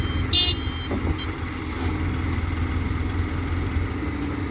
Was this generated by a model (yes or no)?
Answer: no